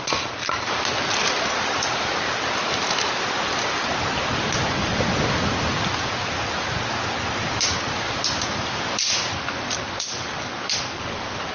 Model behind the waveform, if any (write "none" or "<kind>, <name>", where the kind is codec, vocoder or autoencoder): none